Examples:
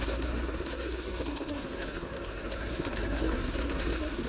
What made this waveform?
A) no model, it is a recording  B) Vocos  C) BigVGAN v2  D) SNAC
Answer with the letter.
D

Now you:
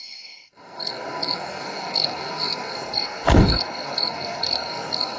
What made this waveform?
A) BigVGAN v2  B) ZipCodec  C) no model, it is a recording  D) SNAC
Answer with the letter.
D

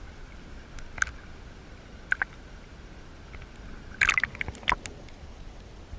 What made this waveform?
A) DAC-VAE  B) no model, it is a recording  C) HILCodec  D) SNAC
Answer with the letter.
B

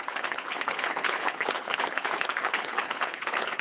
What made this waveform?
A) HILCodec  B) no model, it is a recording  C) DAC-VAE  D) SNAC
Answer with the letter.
A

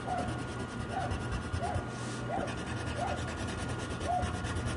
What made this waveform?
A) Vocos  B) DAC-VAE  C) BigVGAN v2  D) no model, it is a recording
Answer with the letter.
D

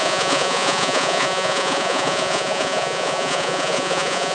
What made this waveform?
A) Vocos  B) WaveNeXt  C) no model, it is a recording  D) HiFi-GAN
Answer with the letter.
A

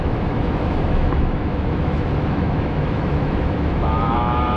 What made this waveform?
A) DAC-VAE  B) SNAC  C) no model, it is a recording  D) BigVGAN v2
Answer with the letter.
A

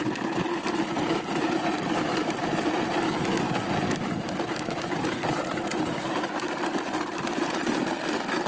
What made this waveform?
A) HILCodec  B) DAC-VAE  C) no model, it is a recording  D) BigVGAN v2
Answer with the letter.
C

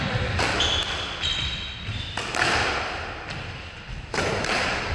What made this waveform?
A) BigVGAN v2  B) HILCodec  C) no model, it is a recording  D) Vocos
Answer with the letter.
C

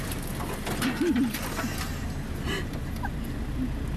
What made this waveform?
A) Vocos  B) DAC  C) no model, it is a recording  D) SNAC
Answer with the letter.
C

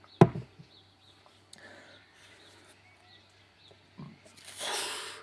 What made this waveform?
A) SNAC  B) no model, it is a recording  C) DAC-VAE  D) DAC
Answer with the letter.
B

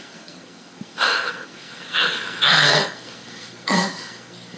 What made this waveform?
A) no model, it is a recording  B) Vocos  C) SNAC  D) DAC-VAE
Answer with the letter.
C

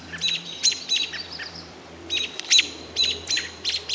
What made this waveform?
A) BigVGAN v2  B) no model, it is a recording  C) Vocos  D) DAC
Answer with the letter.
A